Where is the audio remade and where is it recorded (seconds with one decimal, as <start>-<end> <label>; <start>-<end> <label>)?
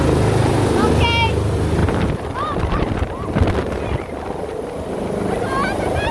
0.0-1.8 recorded; 1.8-3.2 remade; 3.2-6.1 recorded